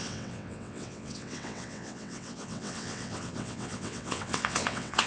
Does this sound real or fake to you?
fake